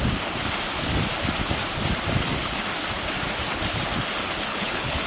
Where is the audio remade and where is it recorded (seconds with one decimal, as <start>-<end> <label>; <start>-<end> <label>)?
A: 0.0-4.5 recorded; 4.5-5.1 remade